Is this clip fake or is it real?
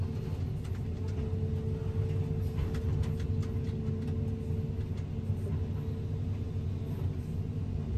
real